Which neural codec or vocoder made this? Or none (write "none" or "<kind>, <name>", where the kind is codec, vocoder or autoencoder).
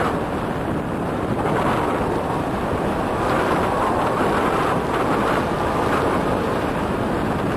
none